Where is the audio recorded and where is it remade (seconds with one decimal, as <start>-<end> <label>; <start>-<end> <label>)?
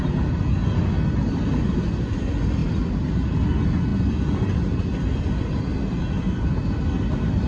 0.0-7.5 recorded